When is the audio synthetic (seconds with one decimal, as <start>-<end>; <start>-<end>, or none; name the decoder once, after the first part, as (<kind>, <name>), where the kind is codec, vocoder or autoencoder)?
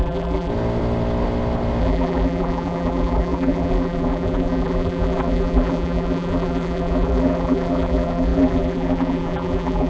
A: 0.0-0.5 (vocoder, BigVGAN v2); 1.8-9.9